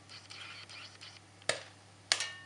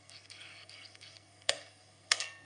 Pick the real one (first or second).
first